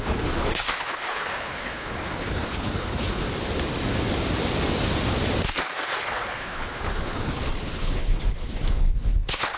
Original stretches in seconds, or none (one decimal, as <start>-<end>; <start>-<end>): 3.2-6.0